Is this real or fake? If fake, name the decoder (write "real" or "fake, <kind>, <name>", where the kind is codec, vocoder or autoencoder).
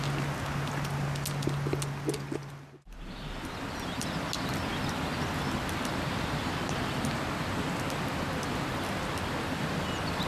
real